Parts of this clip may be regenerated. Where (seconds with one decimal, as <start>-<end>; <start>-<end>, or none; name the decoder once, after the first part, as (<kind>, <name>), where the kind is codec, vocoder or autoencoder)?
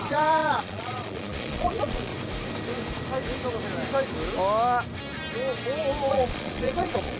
0.0-2.1 (vocoder, Vocos); 6.1-7.2